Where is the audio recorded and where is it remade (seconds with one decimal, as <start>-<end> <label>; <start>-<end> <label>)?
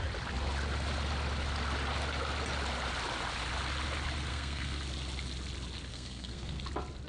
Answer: 0.0-4.3 recorded; 4.3-4.8 remade; 4.8-5.9 recorded; 5.9-6.6 remade; 6.6-7.1 recorded